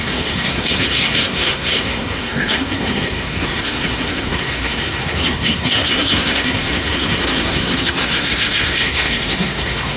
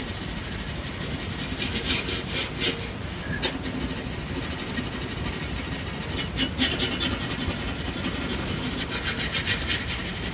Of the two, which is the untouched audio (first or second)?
second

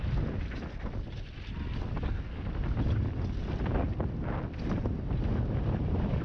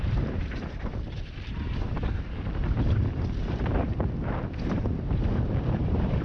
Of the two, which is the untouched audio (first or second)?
first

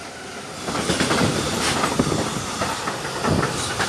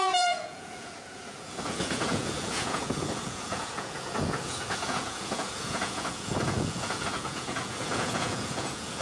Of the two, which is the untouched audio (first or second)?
first